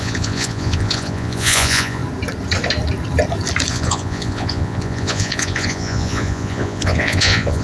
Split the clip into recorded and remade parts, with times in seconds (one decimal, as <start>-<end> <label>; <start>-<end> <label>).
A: 0.0-2.0 remade; 2.0-3.7 recorded; 3.7-7.6 remade

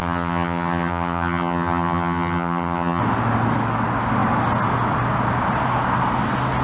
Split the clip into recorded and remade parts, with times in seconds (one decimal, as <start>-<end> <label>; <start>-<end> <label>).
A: 0.0-3.0 remade; 3.0-6.6 recorded

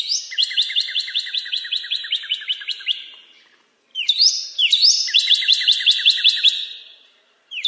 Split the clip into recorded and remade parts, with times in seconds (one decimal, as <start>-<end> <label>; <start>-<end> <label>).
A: 0.0-7.7 remade

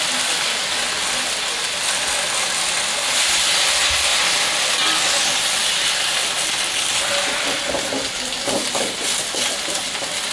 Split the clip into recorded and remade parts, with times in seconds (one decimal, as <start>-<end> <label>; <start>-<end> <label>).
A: 0.0-10.3 recorded

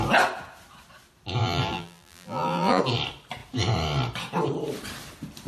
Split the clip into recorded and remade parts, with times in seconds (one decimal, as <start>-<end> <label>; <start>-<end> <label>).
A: 0.0-1.4 recorded; 1.4-2.8 remade; 2.8-5.5 recorded

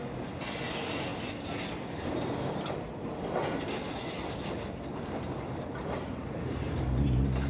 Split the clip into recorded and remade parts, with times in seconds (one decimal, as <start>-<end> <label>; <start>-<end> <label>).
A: 0.0-7.5 recorded